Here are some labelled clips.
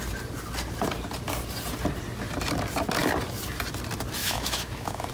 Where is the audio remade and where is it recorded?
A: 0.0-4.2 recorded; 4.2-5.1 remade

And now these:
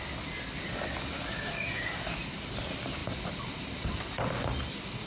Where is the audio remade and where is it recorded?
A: 0.0-3.0 recorded; 3.0-3.6 remade; 3.6-5.1 recorded

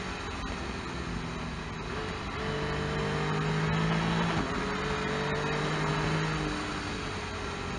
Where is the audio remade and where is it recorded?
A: 0.0-7.8 recorded

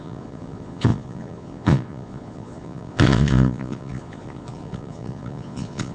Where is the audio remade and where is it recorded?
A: 0.0-5.9 remade

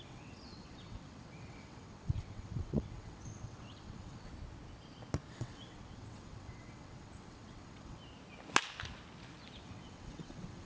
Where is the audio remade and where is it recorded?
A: 0.0-4.3 remade; 4.3-5.3 recorded; 5.3-8.0 remade; 8.0-9.6 recorded; 9.6-10.7 remade

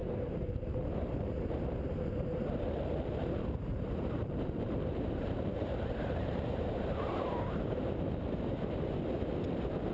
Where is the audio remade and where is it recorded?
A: 0.0-1.6 remade; 1.6-3.7 recorded; 3.7-8.0 remade; 8.0-9.9 recorded

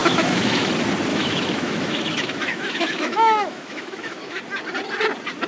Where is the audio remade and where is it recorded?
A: 0.0-0.7 remade; 0.7-1.1 recorded; 1.1-4.4 remade; 4.4-5.5 recorded